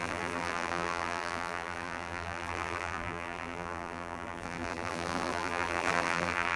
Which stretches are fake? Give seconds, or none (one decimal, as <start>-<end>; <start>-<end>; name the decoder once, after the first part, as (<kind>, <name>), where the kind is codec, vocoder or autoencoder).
0.0-6.6 (vocoder, BigVGAN v2)